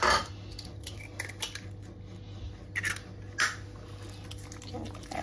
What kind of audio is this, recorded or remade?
recorded